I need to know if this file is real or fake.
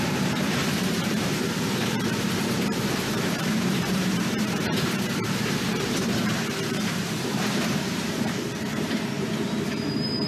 fake